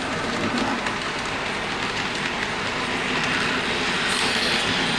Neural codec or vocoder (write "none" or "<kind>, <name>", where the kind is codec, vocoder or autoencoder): none